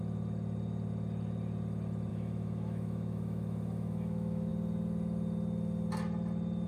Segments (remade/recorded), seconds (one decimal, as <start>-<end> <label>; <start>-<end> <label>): 0.0-2.1 recorded; 2.1-4.5 remade; 4.5-6.7 recorded